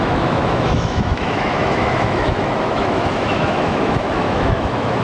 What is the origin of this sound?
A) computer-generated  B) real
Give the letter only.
A